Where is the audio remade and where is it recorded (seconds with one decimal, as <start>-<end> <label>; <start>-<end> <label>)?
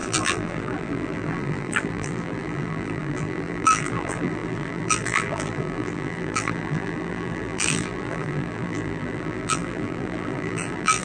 0.0-11.0 remade